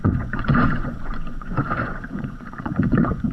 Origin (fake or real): fake